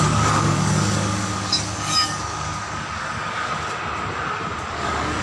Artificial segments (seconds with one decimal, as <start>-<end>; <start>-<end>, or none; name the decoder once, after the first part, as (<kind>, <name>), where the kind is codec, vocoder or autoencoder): 0.0-2.5 (codec, DAC); 3.0-3.5; 4.8-5.2